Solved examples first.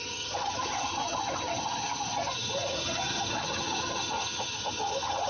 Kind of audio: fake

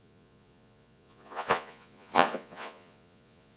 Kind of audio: fake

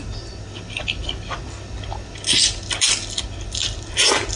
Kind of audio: real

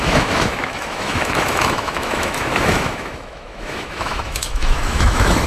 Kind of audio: fake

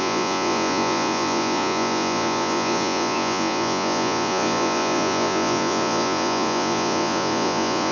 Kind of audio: fake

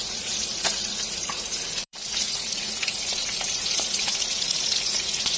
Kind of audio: fake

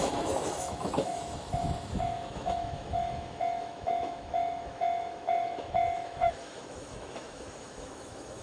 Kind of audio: fake